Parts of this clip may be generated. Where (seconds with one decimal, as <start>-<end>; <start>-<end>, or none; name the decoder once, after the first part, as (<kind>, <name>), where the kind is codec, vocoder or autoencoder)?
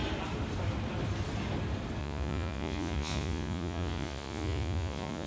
2.0-5.3 (vocoder, Vocos)